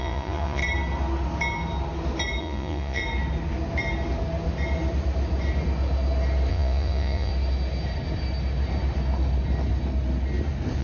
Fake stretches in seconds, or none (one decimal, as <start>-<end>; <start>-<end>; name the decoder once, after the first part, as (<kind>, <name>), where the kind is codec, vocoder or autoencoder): 0.0-0.6 (vocoder, Vocos); 2.4-3.0; 6.5-7.3